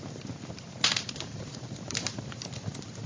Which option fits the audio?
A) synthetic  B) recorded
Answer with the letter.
A